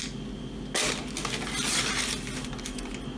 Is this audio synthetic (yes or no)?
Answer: no